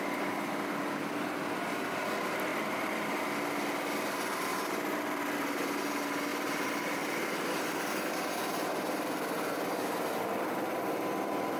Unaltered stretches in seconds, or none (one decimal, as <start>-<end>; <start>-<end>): 0.0-2.5; 3.2-4.5; 5.8-6.3; 7.6-11.6